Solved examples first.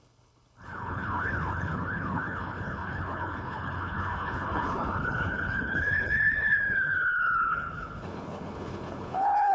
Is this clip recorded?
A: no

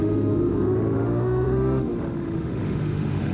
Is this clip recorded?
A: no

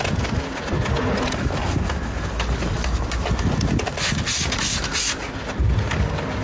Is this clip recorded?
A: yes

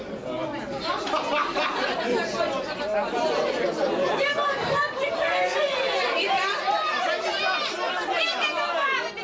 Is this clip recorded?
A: yes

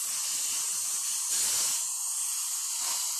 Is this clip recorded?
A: yes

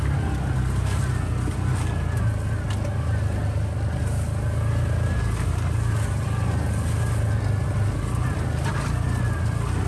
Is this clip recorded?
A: yes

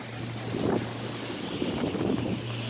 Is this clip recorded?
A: yes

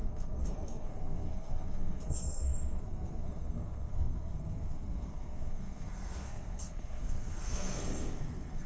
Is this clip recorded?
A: no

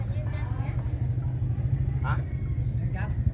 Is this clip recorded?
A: yes